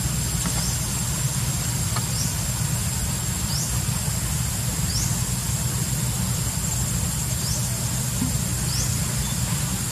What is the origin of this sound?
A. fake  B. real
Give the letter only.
B